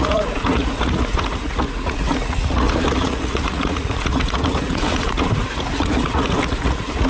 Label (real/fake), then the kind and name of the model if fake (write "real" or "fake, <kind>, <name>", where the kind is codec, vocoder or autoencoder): fake, vocoder, Vocos